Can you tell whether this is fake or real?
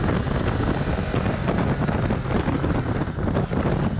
real